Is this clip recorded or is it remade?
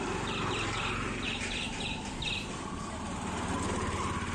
recorded